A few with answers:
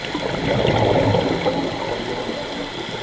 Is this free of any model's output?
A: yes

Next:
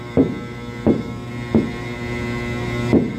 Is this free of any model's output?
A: yes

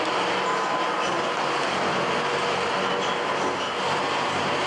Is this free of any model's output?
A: yes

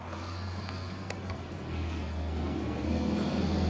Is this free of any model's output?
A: no